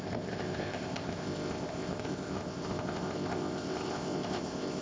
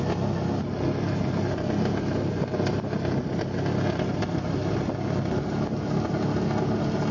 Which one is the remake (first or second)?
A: first